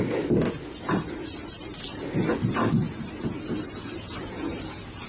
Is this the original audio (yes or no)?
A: yes